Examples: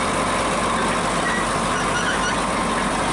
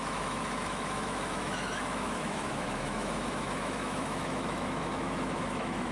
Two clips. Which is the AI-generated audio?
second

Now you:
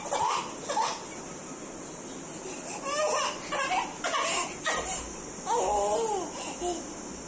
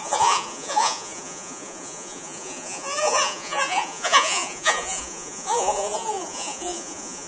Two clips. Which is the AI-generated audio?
second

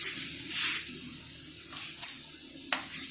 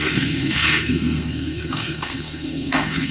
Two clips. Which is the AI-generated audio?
second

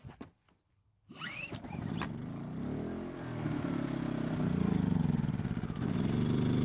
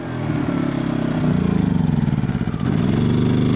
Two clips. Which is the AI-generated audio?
first